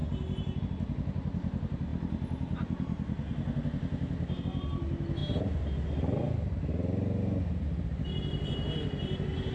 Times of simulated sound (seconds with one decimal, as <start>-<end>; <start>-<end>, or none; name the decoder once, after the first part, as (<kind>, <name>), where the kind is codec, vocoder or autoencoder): 5.2-6.6 (vocoder, BigVGAN v2)